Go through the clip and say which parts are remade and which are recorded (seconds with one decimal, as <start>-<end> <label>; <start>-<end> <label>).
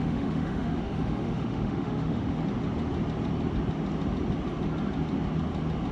0.0-2.4 remade; 2.4-5.9 recorded